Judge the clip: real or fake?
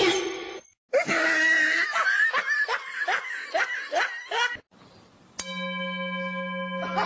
real